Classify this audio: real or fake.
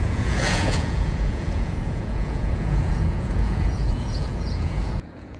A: fake